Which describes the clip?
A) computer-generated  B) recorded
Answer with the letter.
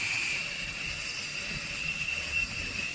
B